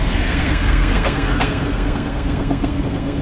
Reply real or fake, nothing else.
fake